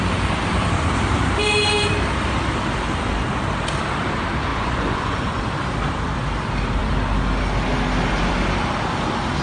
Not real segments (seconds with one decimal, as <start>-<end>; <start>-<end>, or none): 4.5-5.4